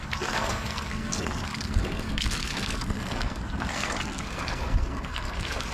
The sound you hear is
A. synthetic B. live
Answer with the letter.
A